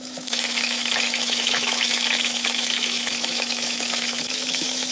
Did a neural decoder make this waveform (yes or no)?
yes